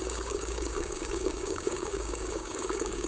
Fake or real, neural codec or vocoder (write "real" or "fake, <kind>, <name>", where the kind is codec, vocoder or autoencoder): fake, codec, DAC